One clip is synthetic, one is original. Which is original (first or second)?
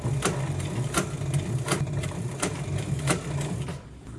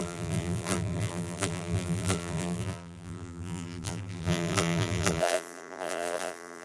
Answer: first